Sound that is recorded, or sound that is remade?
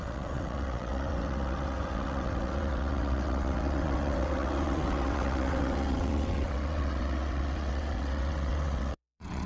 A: remade